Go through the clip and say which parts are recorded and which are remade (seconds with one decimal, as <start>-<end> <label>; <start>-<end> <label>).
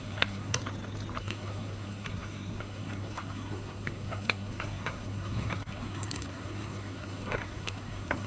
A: 0.0-0.6 remade; 0.6-1.2 recorded; 1.2-8.3 remade